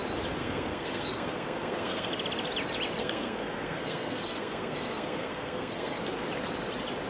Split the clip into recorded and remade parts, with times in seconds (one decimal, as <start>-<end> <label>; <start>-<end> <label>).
0.0-0.4 recorded; 0.4-2.1 remade; 2.1-3.0 recorded; 3.0-6.0 remade; 6.0-7.1 recorded